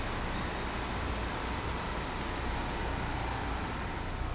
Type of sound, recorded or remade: recorded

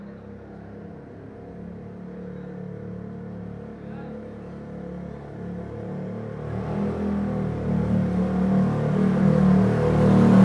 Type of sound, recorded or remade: recorded